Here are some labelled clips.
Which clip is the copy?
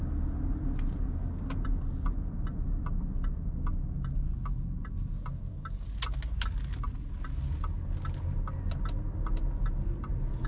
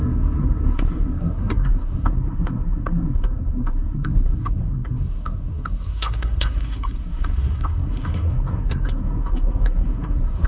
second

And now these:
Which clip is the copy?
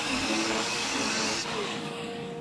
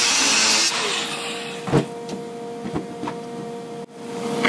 first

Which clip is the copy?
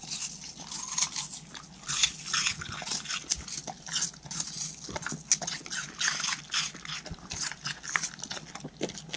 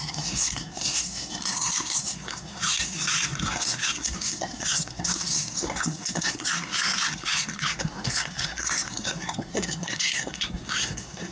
second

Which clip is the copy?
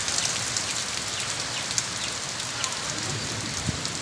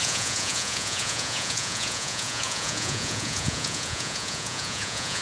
second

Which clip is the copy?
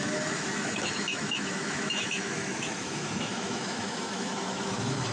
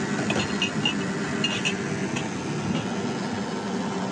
first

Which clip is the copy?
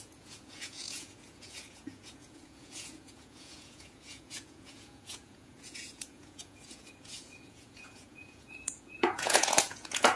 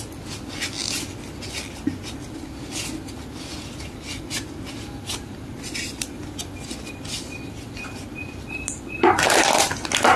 first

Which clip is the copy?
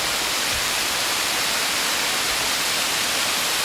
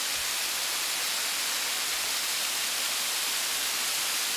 first